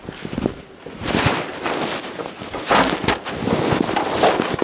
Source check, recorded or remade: recorded